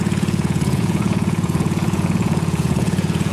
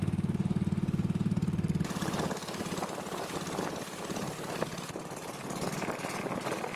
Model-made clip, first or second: first